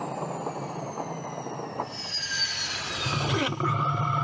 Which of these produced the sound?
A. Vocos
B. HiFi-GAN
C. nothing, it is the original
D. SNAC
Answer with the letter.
C